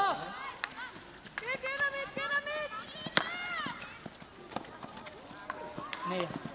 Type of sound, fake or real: real